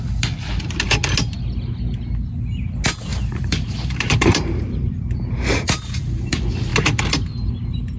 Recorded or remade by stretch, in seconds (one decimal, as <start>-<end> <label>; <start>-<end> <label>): 0.0-3.1 recorded; 3.1-6.0 remade; 6.0-8.0 recorded